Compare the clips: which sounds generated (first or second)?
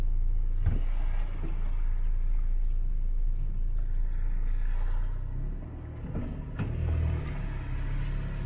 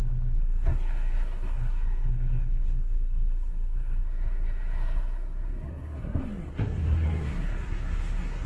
second